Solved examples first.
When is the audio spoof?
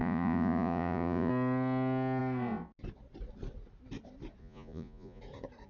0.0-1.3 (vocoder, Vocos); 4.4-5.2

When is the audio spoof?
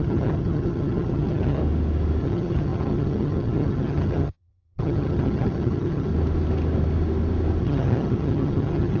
0.0-1.6 (vocoder, HiFi-GAN); 2.2-6.1; 7.6-9.0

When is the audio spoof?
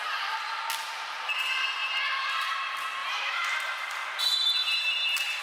1.8-2.6 (vocoder, BigVGAN v2); 3.0-4.1; 4.6-5.4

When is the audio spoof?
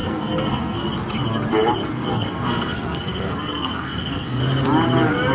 0.0-0.9 (codec, SNAC); 1.8-4.4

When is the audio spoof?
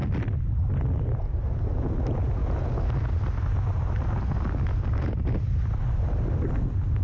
none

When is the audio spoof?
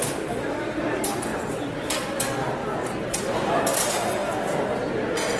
1.3-1.9 (vocoder, BigVGAN v2); 2.6-3.6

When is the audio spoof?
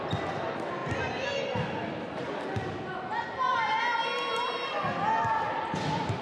none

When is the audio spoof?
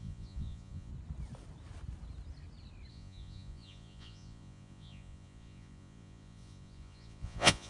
0.0-0.9 (vocoder, Vocos); 2.9-7.7